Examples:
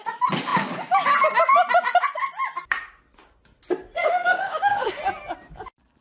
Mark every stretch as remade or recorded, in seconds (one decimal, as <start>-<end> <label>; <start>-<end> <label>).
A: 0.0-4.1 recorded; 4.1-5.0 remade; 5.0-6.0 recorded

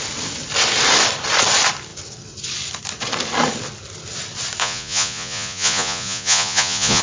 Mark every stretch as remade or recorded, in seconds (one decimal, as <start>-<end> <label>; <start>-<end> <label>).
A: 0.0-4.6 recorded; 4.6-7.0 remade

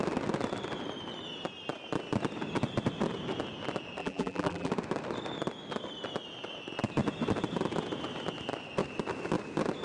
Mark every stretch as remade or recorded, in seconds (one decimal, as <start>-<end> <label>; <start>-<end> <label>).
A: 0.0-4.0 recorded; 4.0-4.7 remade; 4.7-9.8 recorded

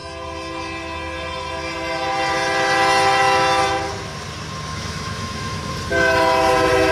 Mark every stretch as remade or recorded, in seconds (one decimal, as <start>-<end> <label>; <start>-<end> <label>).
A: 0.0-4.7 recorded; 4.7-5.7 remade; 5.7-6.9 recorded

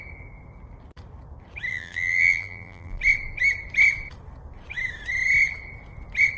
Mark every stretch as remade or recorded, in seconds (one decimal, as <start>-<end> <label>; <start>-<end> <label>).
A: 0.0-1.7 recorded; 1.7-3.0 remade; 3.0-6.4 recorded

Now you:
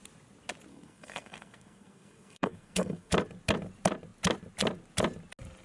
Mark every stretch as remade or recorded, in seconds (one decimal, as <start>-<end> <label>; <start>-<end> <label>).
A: 0.0-0.7 recorded; 0.7-3.1 remade; 3.1-5.6 recorded

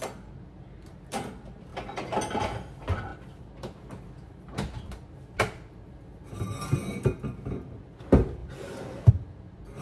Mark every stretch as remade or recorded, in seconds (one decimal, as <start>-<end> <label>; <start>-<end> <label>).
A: 0.0-9.8 recorded